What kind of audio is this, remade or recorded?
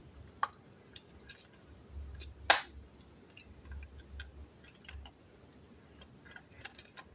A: recorded